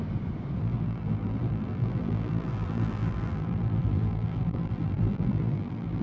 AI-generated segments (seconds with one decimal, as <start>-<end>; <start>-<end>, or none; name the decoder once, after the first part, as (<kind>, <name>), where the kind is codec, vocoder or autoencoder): 0.6-6.0 (vocoder, BigVGAN v2)